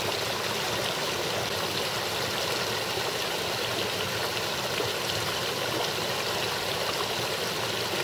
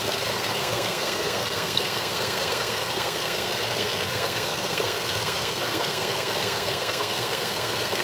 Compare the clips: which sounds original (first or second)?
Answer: first